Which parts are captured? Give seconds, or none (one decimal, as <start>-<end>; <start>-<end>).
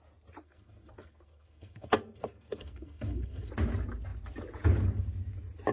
0.0-0.4; 3.5-5.7